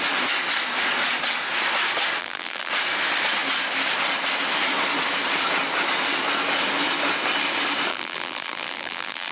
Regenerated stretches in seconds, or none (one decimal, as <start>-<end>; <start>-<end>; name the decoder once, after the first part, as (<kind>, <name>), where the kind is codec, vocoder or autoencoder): 2.2-2.7 (vocoder, BigVGAN v2); 7.9-9.3